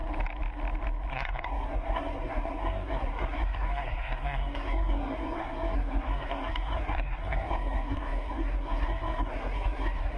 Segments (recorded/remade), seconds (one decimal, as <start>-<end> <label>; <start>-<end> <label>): 0.0-1.1 recorded; 1.1-10.2 remade

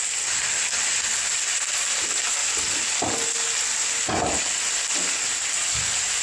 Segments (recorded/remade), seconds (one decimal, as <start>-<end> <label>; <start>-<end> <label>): 0.0-6.2 recorded

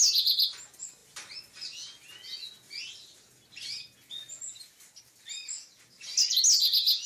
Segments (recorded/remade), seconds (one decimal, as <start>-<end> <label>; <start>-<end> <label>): 0.0-7.1 recorded